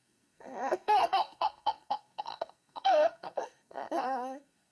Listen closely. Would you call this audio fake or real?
fake